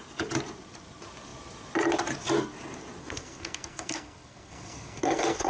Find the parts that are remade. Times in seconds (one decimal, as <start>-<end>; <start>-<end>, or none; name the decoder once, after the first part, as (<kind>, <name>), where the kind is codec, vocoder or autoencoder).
3.0-5.5 (codec, SNAC)